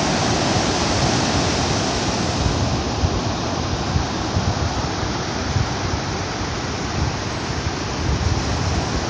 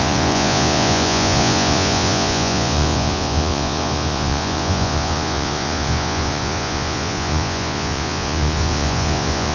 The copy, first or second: second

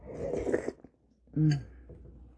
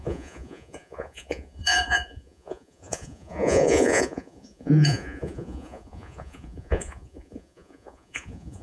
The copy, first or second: second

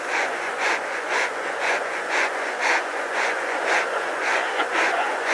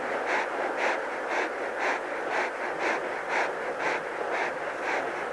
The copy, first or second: first